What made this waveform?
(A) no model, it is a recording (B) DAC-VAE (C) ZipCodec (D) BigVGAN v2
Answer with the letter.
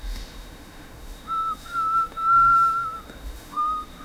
B